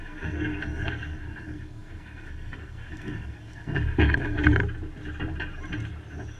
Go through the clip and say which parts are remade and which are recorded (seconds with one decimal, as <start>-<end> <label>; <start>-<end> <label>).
0.0-4.6 remade; 4.6-6.4 recorded